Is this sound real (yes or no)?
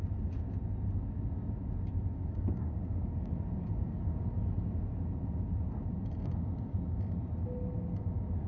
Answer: yes